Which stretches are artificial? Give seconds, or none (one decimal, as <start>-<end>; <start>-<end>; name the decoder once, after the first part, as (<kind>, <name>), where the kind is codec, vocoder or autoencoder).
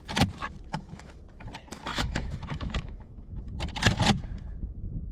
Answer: 0.7-1.2 (autoencoder, DAC-VAE); 1.9-3.4